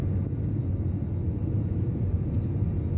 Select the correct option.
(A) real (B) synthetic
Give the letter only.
A